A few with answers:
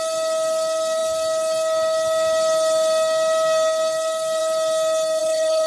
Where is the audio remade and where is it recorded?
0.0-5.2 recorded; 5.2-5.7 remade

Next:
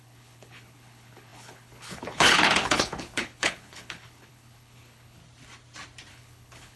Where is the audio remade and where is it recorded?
0.0-5.2 remade; 5.2-6.1 recorded; 6.1-6.8 remade

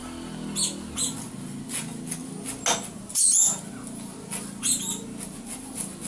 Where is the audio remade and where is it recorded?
0.0-6.1 recorded

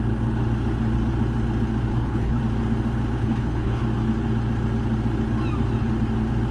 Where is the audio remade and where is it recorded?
0.0-1.9 recorded; 1.9-2.4 remade; 2.4-3.2 recorded; 3.2-3.8 remade; 3.8-6.5 recorded